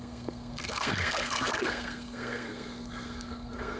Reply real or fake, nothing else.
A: fake